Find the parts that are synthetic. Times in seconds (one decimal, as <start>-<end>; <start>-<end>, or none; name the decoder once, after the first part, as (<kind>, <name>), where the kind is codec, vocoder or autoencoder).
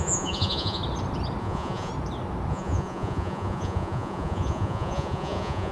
0.0-0.8 (vocoder, Vocos); 1.4-1.9; 2.5-5.7